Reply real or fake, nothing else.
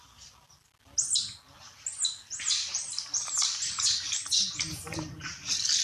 real